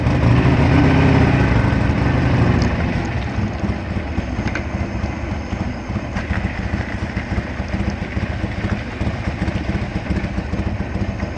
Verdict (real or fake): real